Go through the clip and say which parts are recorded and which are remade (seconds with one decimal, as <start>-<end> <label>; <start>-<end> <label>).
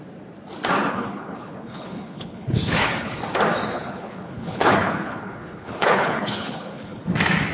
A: 0.0-0.9 recorded; 0.9-3.2 remade; 3.2-3.7 recorded; 3.7-7.0 remade; 7.0-7.5 recorded